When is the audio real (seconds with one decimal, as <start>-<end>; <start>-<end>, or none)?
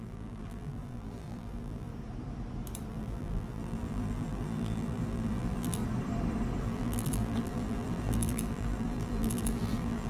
1.9-2.9; 5.8-6.6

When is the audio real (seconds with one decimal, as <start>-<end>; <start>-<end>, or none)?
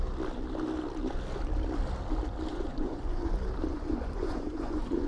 0.0-2.5; 3.3-3.7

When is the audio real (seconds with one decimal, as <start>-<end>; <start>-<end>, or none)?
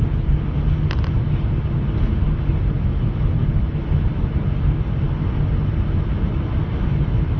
0.0-7.4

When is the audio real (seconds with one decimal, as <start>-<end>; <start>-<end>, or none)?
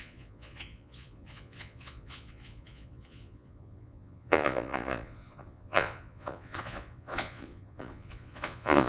none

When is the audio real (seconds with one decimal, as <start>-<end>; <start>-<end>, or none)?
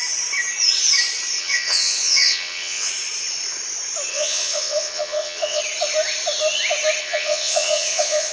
0.0-1.4; 2.9-4.1; 5.6-7.0